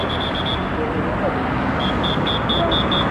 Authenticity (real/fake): real